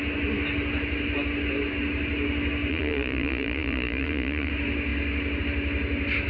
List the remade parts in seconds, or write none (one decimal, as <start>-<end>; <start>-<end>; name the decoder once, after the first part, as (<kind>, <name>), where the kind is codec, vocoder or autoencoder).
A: 2.7-4.5 (vocoder, Vocos)